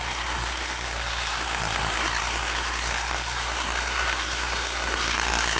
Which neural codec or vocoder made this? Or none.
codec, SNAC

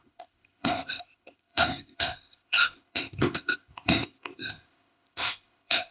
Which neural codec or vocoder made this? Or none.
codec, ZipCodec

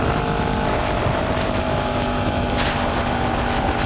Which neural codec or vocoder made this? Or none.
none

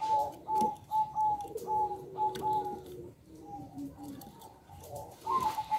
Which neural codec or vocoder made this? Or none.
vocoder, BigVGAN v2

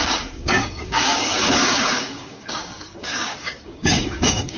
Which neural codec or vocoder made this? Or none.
codec, DAC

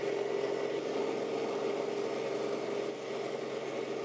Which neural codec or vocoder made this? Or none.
none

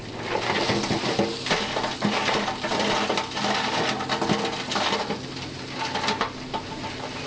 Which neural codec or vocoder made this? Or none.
none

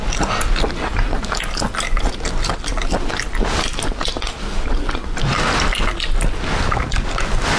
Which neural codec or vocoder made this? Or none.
none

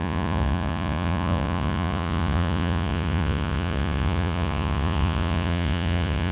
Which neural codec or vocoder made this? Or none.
vocoder, Vocos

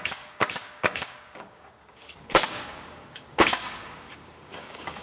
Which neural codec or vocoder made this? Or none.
codec, DAC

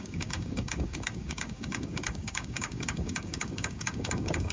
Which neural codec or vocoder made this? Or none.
codec, DAC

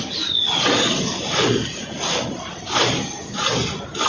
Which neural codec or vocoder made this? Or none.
none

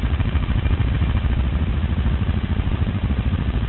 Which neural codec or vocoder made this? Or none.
vocoder, Vocos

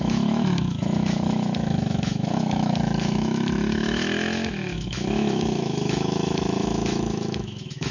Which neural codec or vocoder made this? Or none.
autoencoder, DAC-VAE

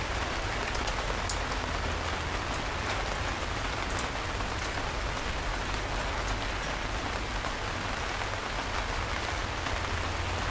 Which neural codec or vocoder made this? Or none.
none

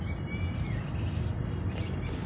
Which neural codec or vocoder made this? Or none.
none